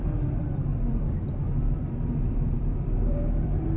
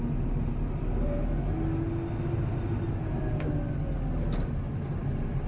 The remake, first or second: first